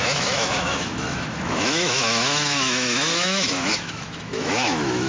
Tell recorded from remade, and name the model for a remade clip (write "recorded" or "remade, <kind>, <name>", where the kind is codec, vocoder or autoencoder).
remade, autoencoder, DAC-VAE